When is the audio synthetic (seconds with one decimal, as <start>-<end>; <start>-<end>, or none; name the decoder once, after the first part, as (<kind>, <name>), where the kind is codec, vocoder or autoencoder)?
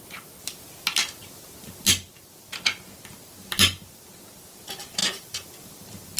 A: 5.0-5.5 (vocoder, BigVGAN v2)